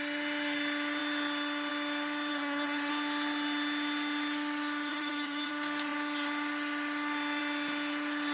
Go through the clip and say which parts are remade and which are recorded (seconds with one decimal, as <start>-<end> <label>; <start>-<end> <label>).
0.0-2.3 recorded; 2.3-2.9 remade; 2.9-4.9 recorded; 4.9-5.5 remade; 5.5-8.3 recorded